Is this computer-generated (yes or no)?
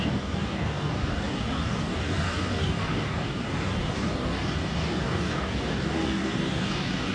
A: yes